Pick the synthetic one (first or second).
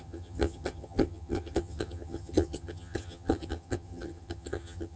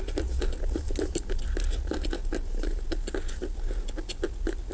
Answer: first